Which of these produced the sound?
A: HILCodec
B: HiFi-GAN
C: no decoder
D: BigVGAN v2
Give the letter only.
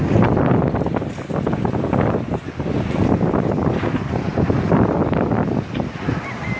C